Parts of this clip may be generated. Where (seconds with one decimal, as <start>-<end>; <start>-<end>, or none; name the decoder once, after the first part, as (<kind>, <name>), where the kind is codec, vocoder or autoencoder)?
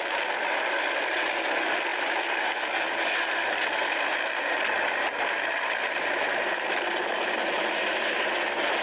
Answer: none